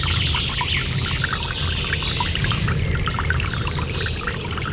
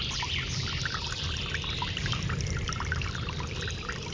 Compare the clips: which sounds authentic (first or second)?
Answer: first